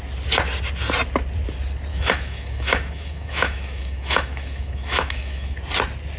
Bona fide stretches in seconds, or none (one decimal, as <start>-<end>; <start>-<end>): 0.0-1.9; 5.6-6.2